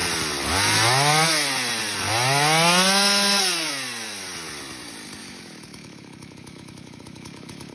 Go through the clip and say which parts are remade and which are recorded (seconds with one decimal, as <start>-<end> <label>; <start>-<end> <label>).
0.0-5.2 recorded; 5.2-7.7 remade